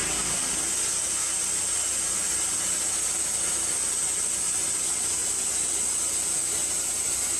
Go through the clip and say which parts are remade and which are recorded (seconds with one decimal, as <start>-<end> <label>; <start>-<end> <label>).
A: 0.0-7.4 recorded